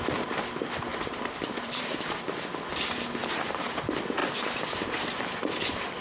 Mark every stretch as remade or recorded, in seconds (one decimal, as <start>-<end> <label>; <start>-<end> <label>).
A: 0.0-0.9 recorded; 0.9-2.2 remade; 2.2-3.2 recorded; 3.2-3.8 remade; 3.8-6.0 recorded